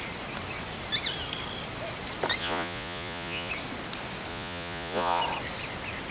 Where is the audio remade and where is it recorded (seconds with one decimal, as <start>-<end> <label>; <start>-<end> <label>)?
0.0-2.4 recorded; 2.4-3.5 remade; 3.5-4.3 recorded; 4.3-5.2 remade; 5.2-6.1 recorded